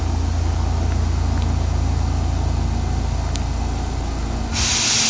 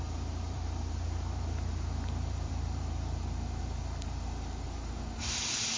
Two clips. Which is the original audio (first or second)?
first